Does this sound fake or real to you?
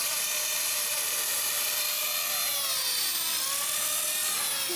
real